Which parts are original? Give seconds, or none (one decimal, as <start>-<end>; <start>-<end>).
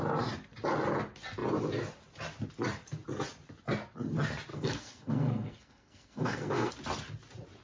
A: 0.0-4.5; 6.7-7.6